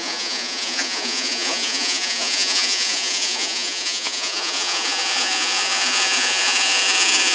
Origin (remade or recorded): remade